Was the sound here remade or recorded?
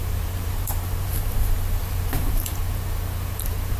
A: remade